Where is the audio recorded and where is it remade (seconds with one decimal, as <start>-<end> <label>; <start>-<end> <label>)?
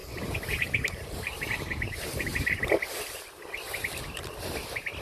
0.0-2.7 remade; 2.7-5.0 recorded